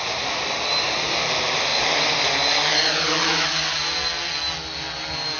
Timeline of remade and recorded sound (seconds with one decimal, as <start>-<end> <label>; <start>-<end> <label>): 0.0-5.4 recorded